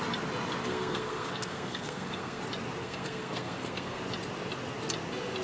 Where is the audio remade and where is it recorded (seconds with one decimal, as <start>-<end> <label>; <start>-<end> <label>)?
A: 0.0-0.6 recorded; 0.6-2.4 remade; 2.4-2.8 recorded; 2.8-4.0 remade; 4.0-5.4 recorded